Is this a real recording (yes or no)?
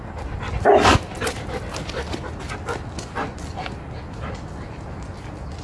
yes